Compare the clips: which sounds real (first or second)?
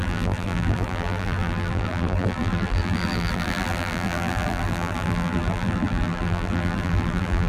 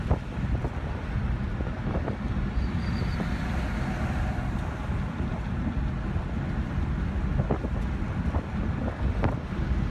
second